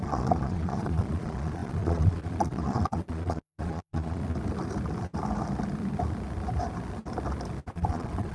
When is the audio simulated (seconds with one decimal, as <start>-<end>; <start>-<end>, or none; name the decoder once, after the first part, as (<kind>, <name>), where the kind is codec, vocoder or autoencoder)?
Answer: 0.0-4.2 (vocoder, Vocos); 7.7-8.3